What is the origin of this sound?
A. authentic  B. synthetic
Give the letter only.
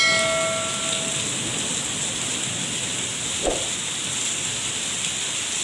A